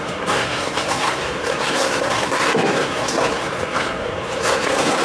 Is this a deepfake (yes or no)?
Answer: yes